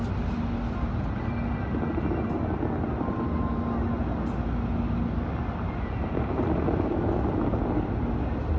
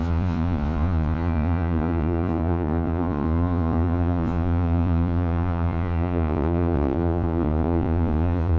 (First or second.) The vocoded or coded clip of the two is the second